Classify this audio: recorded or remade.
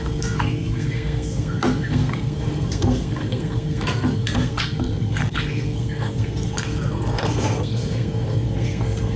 remade